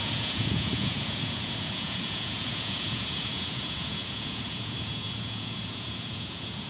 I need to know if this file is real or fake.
fake